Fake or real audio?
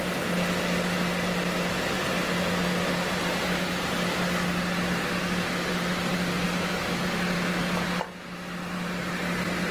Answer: real